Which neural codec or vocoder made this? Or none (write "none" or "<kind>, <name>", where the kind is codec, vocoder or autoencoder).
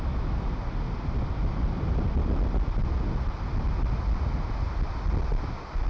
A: none